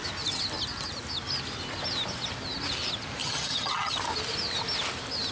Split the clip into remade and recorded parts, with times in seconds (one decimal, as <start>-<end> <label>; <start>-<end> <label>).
0.0-3.2 recorded; 3.2-4.0 remade; 4.0-5.3 recorded